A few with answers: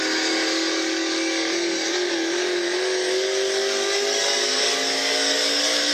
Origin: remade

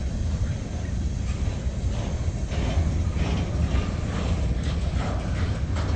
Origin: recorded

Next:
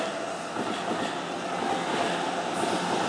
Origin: recorded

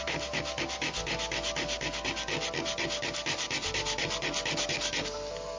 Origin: recorded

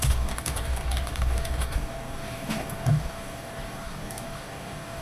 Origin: remade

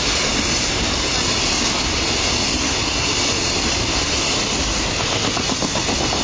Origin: recorded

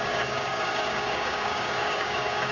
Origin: remade